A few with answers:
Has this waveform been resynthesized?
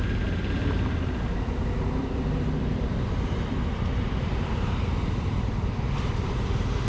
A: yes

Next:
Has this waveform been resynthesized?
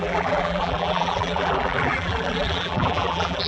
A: yes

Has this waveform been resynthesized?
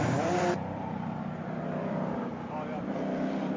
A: yes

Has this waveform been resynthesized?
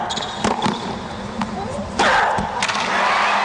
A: no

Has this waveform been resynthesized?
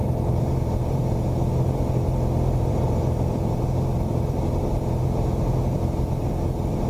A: yes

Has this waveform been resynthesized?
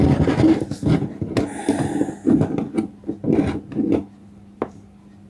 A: no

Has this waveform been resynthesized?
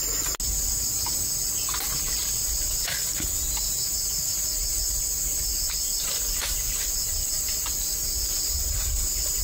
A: no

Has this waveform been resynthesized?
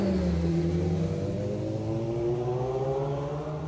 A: no